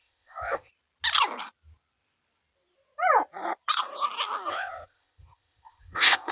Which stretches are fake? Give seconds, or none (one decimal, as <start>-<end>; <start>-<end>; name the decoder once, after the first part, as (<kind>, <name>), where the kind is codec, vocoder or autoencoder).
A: 0.0-0.7 (codec, ZipCodec); 4.5-6.3